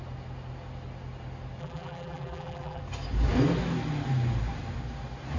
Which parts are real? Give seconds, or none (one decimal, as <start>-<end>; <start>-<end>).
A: 0.0-1.6; 2.8-5.4